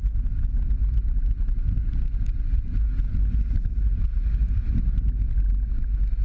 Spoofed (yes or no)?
no